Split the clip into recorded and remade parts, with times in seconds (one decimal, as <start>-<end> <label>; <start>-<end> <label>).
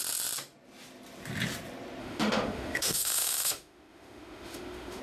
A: 0.0-2.0 recorded; 2.0-5.0 remade